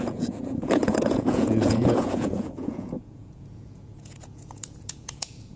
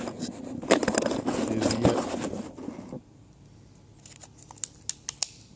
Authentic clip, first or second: second